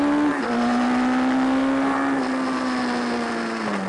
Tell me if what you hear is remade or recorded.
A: recorded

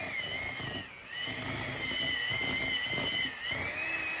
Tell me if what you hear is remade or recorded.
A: recorded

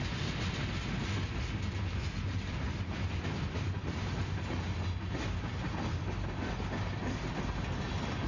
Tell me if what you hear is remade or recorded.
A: recorded